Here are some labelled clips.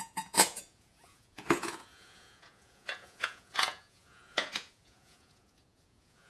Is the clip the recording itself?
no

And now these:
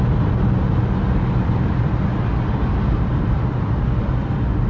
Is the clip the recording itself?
yes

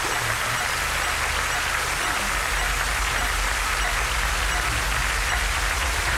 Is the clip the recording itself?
yes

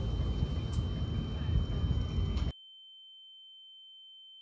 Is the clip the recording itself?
yes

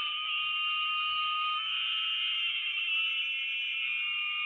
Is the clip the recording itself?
no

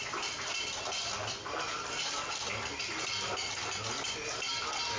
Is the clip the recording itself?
yes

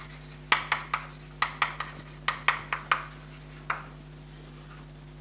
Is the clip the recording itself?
yes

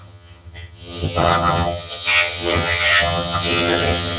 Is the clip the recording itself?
no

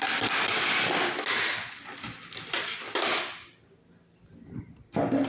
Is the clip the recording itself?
yes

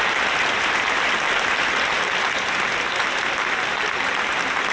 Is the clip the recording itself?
yes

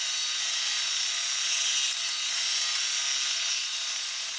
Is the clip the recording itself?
yes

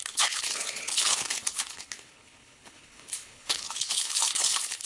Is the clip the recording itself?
no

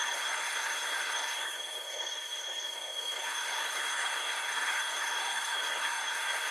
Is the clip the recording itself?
no